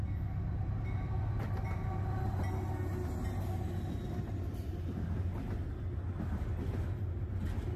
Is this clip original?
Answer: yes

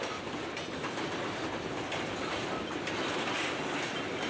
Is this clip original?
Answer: no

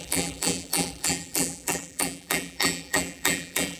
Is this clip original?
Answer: no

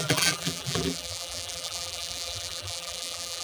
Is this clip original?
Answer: no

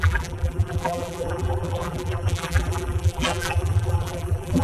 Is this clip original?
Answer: no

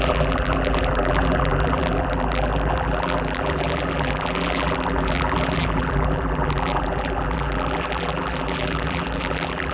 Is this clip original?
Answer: no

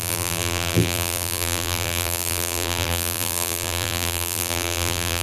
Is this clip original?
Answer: no